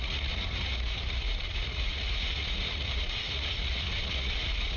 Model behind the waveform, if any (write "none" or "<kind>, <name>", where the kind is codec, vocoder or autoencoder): vocoder, Vocos